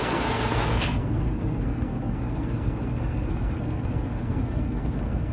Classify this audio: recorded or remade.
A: remade